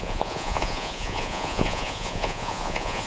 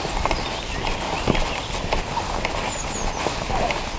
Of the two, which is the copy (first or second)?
first